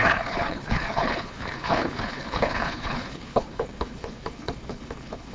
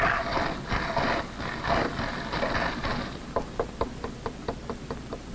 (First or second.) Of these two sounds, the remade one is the first